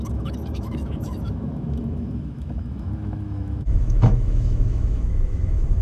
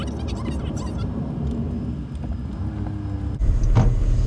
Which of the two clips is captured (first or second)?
second